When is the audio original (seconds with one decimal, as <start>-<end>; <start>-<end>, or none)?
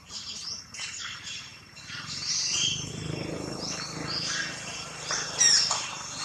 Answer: 0.0-6.2